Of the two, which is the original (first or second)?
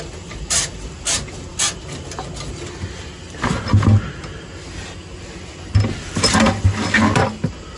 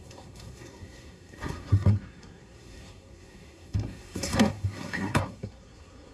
first